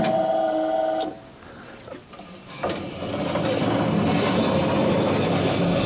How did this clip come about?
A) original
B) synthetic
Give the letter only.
A